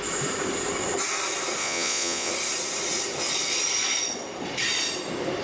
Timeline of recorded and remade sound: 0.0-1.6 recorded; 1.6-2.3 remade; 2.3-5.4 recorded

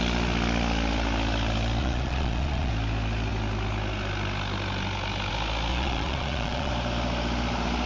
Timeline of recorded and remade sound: 0.0-1.8 recorded; 1.8-2.7 remade; 2.7-5.7 recorded; 5.7-6.7 remade; 6.7-7.9 recorded

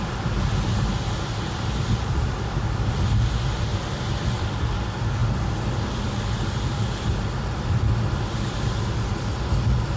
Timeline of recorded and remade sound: 0.0-10.0 recorded